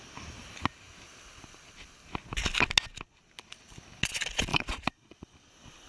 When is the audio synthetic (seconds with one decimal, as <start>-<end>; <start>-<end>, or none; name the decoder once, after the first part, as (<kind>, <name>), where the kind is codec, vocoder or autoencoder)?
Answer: 4.5-5.5 (vocoder, Vocos)